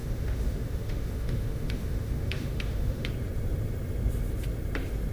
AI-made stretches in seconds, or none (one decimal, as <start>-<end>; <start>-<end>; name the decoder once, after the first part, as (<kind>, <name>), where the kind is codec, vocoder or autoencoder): 0.0-3.1 (autoencoder, DAC-VAE)

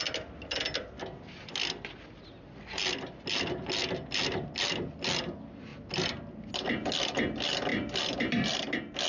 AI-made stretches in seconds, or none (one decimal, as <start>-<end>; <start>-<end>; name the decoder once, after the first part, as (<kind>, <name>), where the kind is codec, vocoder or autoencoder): none

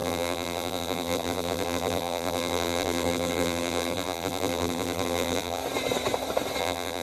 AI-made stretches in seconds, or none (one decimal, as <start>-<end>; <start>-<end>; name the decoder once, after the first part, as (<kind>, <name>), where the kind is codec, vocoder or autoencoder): 0.0-5.6 (vocoder, BigVGAN v2); 6.6-7.0

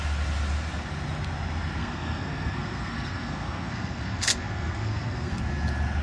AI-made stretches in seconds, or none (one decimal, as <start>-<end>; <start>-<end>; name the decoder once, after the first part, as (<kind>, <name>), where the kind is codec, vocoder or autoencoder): 1.8-5.4 (codec, SNAC)

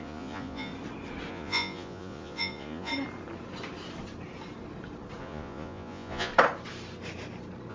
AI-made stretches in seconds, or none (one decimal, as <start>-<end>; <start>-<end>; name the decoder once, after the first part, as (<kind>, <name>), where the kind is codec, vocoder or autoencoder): 0.0-0.7 (vocoder, Vocos); 1.3-2.9; 5.2-6.3

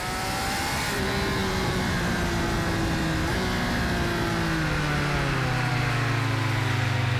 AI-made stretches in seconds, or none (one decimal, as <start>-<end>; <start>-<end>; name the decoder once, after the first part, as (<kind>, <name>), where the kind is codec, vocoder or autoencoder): none

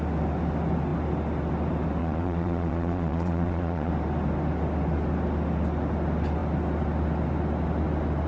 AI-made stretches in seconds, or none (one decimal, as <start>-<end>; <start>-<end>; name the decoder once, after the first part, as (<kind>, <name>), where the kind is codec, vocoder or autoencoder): 2.0-3.9 (vocoder, Vocos)